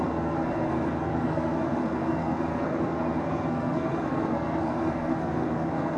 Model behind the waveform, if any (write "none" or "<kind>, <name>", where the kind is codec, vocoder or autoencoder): codec, SNAC